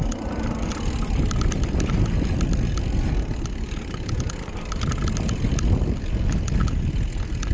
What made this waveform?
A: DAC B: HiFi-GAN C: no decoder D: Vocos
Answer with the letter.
C